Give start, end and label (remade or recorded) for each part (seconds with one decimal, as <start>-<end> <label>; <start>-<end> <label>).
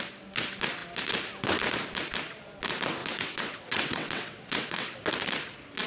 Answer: 0.0-3.0 recorded; 3.0-5.0 remade; 5.0-5.9 recorded